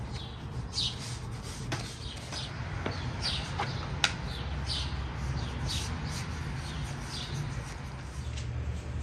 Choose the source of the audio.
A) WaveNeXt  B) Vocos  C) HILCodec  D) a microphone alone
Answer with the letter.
D